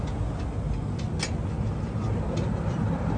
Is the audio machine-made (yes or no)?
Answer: no